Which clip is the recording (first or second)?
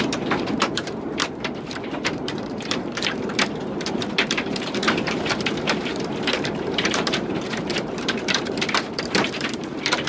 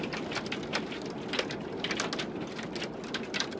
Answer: second